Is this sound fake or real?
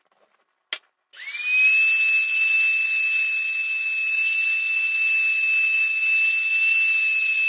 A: real